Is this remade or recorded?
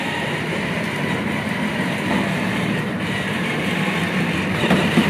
remade